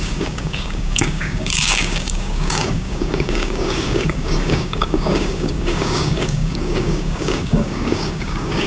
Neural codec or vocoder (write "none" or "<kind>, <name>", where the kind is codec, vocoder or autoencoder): codec, DAC